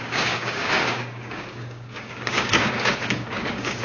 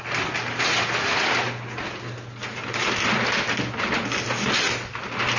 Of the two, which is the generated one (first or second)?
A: first